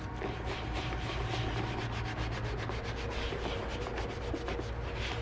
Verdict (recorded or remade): recorded